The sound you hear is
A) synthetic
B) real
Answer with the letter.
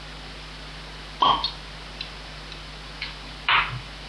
B